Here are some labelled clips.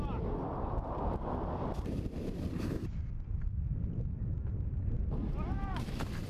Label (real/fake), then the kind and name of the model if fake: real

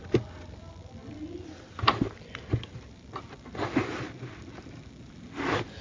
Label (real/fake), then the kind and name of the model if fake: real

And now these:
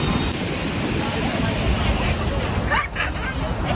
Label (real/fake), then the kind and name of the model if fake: real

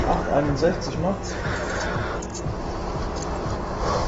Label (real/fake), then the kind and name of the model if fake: real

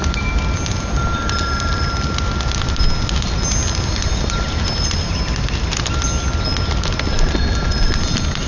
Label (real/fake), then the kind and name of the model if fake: real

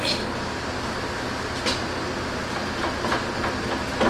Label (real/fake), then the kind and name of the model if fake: real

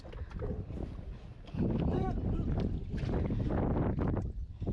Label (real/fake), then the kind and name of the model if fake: real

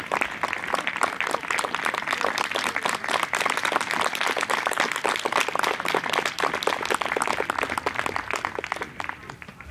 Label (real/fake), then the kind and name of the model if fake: real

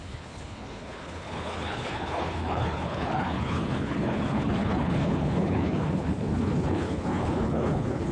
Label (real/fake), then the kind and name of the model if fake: fake, codec, HILCodec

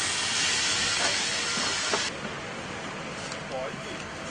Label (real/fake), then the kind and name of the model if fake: real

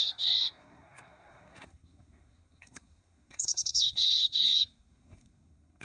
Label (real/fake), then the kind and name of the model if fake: fake, codec, SNAC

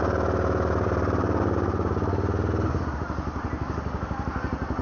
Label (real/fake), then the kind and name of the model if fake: real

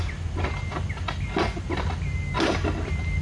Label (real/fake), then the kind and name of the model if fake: real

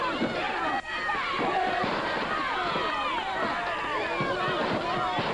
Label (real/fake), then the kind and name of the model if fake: fake, vocoder, BigVGAN v2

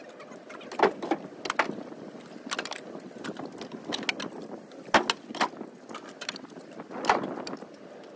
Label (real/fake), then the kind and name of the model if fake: real